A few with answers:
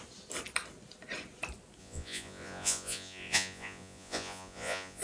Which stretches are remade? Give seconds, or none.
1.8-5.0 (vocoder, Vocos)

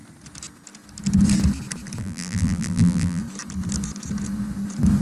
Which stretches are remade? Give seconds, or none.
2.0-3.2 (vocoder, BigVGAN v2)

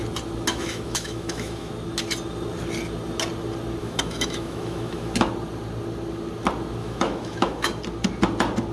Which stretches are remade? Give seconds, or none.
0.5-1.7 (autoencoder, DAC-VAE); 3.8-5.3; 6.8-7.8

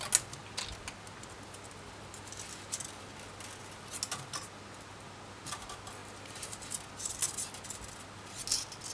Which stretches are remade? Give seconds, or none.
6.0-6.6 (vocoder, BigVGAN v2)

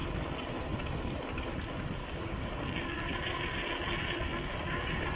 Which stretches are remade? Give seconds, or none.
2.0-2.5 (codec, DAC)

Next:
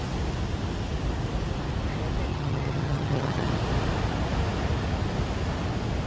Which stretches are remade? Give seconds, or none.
2.3-3.5 (vocoder, HiFi-GAN)